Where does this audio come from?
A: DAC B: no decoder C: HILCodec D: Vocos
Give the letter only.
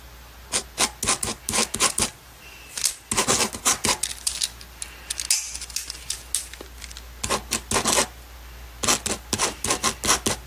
B